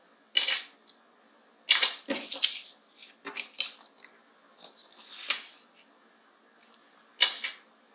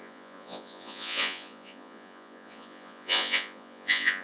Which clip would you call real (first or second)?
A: first